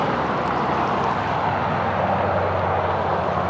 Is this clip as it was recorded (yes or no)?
yes